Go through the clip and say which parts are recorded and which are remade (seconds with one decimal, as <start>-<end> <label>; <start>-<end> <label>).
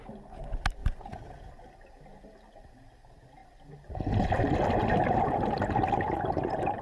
0.0-0.8 recorded; 0.8-1.5 remade; 1.5-6.8 recorded